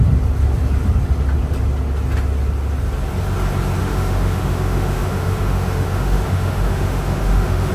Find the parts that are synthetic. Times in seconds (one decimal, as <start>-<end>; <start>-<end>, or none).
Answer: 3.8-7.7